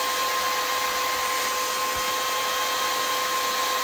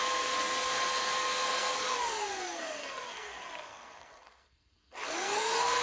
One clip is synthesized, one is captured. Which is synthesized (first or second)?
second